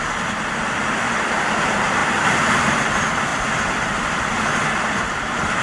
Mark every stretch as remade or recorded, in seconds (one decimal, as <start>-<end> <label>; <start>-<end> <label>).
0.0-2.0 recorded; 2.0-2.7 remade; 2.7-3.3 recorded; 3.3-4.3 remade; 4.3-5.6 recorded